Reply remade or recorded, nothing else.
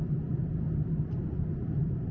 remade